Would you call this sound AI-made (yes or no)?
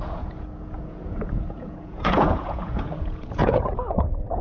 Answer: yes